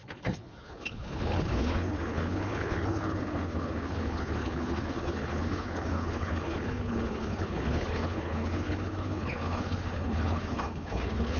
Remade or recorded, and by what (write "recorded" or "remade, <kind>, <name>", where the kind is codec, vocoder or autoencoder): remade, codec, HILCodec